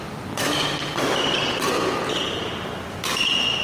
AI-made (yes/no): yes